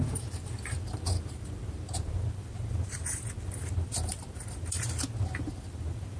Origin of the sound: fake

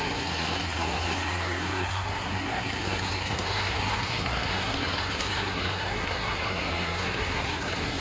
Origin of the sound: fake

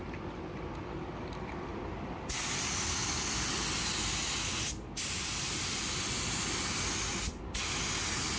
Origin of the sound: real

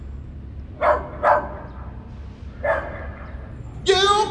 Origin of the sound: real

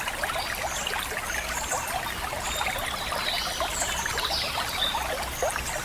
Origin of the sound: real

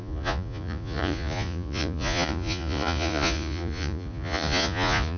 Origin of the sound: fake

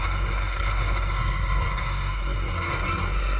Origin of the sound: fake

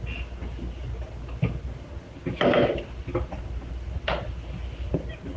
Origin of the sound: real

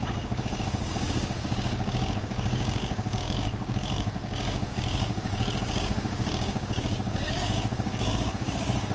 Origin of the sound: fake